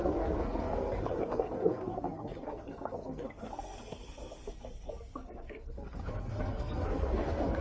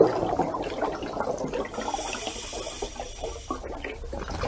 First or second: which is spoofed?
first